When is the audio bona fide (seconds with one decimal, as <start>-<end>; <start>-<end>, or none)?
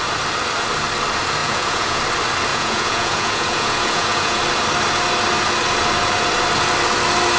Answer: 0.0-1.4; 2.0-2.5; 4.4-7.4